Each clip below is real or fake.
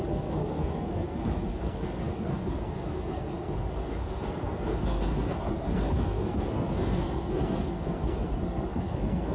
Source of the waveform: fake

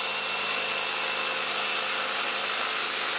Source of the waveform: real